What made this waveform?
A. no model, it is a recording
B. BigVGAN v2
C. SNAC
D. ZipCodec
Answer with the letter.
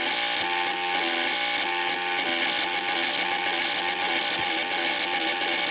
A